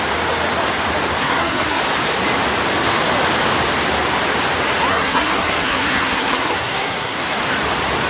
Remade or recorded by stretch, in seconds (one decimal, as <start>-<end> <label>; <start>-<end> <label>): 0.0-1.2 recorded; 1.2-1.8 remade; 1.8-4.9 recorded; 4.9-7.4 remade; 7.4-8.1 recorded